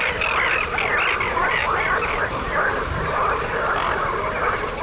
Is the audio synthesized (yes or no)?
no